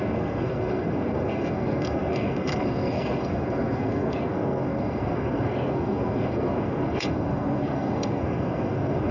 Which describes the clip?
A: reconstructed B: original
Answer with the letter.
A